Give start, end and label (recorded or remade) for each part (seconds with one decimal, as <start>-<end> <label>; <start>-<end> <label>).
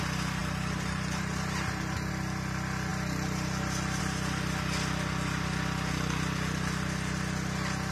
0.0-0.4 recorded; 0.4-2.1 remade; 2.1-7.9 recorded